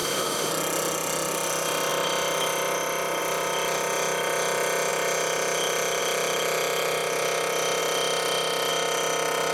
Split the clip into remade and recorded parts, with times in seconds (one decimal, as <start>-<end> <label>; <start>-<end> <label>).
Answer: 0.0-0.5 remade; 0.5-9.5 recorded